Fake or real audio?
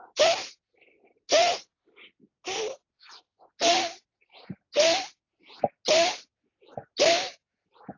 real